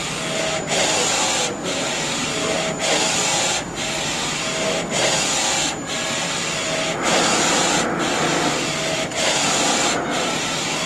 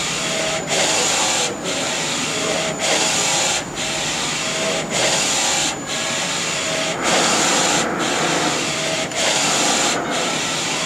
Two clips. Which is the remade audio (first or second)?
second